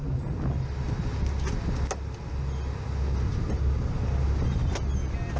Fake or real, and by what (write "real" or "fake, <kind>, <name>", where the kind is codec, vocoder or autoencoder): real